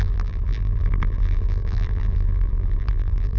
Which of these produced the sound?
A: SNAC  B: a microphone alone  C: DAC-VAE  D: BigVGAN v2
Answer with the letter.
D